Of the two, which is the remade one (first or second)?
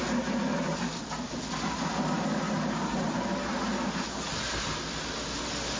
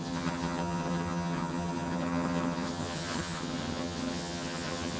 second